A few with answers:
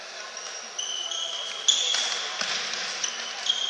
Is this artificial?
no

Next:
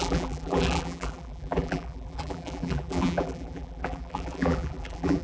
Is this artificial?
yes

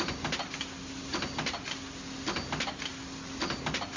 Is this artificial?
no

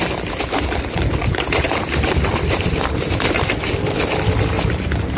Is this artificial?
no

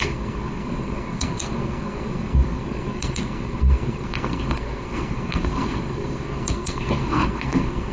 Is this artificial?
yes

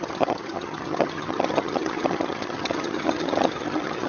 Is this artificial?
yes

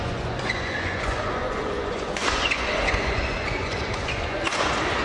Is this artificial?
yes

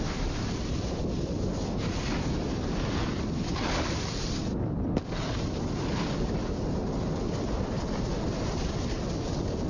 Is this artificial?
no